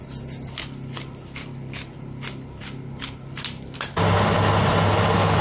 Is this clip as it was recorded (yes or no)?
yes